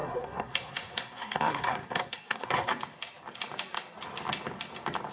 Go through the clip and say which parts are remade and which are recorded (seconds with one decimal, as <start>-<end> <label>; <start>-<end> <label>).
0.0-2.7 remade; 2.7-5.1 recorded